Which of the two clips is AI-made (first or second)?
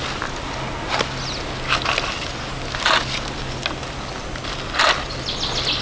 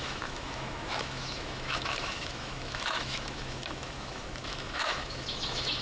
second